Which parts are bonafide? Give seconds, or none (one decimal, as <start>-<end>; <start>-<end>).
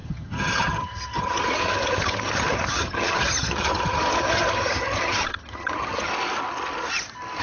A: 6.1-7.4